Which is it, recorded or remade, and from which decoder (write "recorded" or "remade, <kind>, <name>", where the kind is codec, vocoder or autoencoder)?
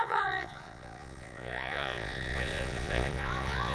remade, vocoder, Vocos